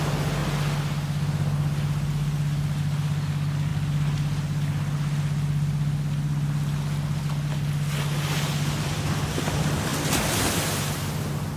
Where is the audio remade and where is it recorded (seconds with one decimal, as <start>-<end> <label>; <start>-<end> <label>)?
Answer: 0.0-11.6 recorded